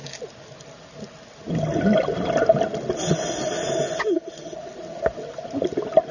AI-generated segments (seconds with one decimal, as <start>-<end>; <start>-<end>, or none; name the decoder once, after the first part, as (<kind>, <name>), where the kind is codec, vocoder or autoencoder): none